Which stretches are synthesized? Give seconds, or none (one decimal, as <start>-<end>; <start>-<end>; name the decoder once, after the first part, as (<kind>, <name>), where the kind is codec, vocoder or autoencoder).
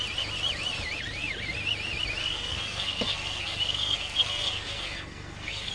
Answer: 2.2-5.7 (codec, SNAC)